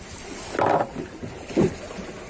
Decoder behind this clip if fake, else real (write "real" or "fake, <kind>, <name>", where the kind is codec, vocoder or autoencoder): real